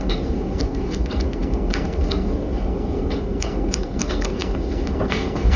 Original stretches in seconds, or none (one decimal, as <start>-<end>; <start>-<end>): none